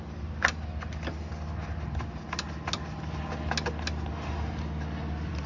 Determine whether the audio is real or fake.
real